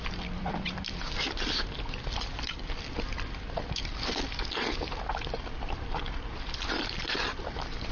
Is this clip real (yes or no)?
no